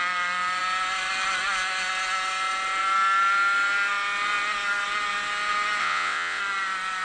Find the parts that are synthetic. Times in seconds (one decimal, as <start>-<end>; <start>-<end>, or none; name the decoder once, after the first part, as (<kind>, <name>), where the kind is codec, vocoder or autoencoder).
5.8-6.4 (vocoder, WaveNeXt)